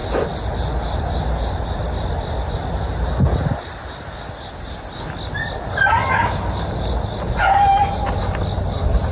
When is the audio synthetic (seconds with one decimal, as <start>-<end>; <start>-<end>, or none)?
none